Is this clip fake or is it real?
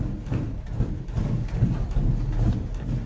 real